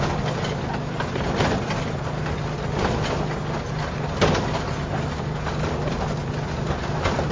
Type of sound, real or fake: real